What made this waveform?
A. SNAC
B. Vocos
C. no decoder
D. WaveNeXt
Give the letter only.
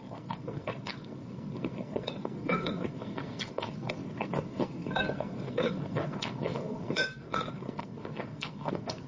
A